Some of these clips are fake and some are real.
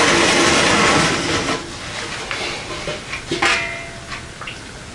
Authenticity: real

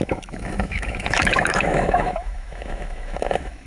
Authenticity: fake